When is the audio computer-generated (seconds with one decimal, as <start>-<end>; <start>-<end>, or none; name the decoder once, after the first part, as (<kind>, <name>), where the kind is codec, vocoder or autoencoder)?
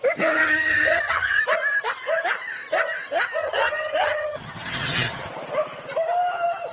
0.4-1.4 (vocoder, HiFi-GAN); 3.4-5.3